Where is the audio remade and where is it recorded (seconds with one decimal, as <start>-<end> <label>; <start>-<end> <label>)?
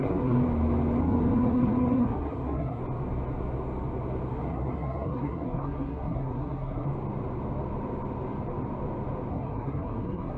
0.0-0.4 remade; 0.4-1.0 recorded; 1.0-2.8 remade; 2.8-4.3 recorded; 4.3-6.9 remade; 6.9-9.3 recorded; 9.3-10.4 remade